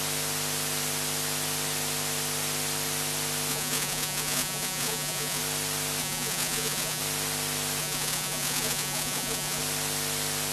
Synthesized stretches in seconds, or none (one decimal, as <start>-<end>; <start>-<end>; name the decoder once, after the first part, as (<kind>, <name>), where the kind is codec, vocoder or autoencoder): 3.5-5.4 (vocoder, Vocos); 6.0-7.0; 7.8-9.6